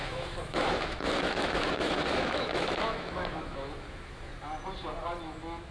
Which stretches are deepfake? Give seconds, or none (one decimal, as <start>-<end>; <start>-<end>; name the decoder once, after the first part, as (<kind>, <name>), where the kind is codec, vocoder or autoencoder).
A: 0.0-4.3 (autoencoder, DAC-VAE); 5.2-5.7